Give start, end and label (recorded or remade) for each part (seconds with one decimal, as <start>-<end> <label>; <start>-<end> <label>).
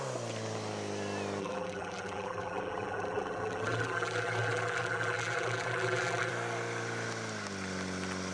0.0-1.4 recorded; 1.4-6.3 remade; 6.3-8.3 recorded